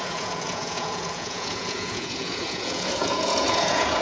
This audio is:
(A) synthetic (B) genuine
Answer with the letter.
A